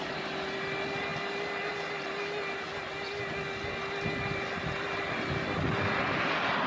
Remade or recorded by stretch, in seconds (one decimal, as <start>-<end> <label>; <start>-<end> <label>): 0.0-6.7 recorded